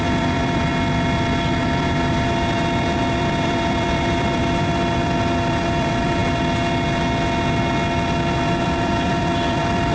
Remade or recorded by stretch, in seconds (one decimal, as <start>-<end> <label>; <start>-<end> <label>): 0.0-0.7 remade; 0.7-1.6 recorded; 1.6-6.2 remade; 6.2-8.6 recorded; 8.6-9.9 remade